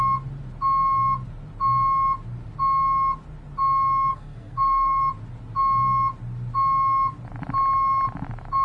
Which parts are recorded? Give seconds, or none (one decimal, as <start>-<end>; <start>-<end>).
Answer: 0.0-4.1; 5.0-8.6